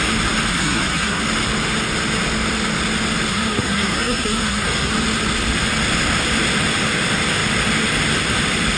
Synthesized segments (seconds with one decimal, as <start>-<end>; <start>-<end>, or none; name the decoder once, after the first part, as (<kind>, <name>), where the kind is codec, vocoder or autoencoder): 0.5-1.2 (codec, SNAC); 3.3-4.9